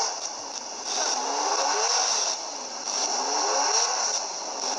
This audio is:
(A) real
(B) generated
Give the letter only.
A